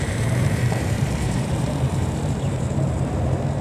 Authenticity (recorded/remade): remade